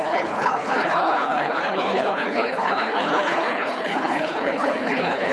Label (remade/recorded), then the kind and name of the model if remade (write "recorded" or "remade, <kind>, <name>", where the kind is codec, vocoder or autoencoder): remade, codec, HILCodec